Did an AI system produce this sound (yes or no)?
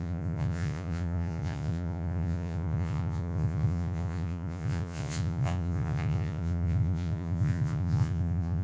yes